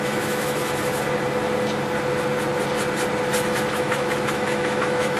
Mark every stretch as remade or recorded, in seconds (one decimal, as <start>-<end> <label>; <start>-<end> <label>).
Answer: 0.0-0.6 remade; 0.6-3.7 recorded; 3.7-5.2 remade